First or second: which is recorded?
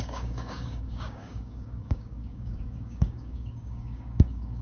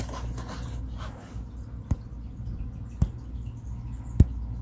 second